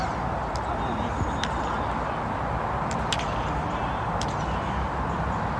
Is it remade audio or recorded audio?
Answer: recorded